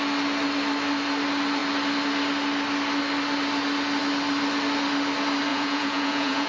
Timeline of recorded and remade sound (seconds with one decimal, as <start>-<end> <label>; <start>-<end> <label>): 0.0-5.5 recorded; 5.5-6.5 remade